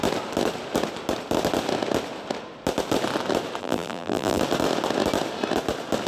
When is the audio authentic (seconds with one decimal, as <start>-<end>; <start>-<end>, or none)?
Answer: 0.0-3.6; 4.4-6.1